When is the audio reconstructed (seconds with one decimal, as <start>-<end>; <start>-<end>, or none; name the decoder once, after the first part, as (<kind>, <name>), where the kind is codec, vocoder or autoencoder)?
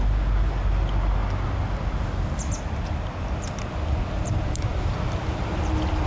none